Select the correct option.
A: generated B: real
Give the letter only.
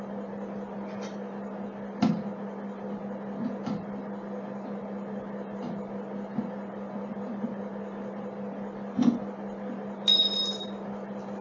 B